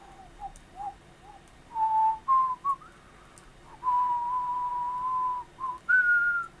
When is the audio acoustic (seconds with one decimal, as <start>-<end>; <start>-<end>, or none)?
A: 0.0-6.6